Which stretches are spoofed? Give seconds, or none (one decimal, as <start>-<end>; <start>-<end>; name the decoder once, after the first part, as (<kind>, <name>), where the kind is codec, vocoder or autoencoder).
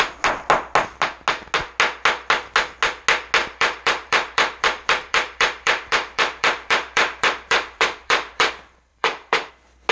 3.4-8.5 (vocoder, BigVGAN v2); 8.9-9.5